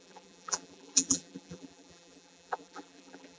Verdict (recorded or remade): remade